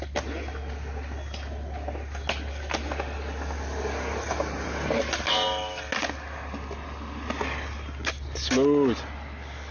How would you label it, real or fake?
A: real